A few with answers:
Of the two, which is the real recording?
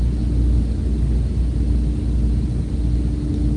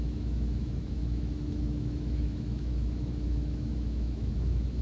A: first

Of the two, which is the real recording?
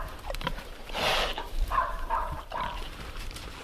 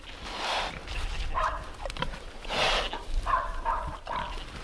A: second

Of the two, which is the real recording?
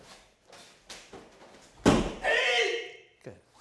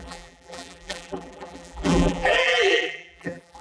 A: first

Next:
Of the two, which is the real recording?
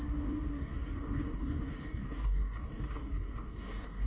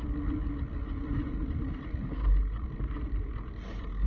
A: second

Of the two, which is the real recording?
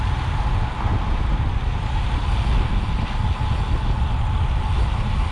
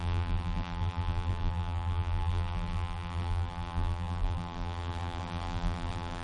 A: first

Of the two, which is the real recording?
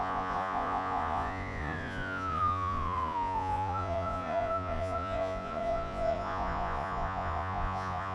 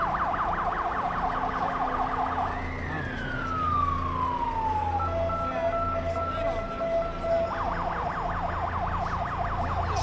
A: second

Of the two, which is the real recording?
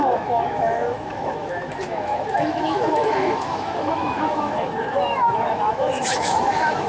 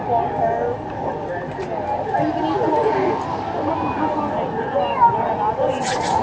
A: second